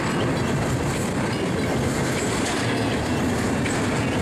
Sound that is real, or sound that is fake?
real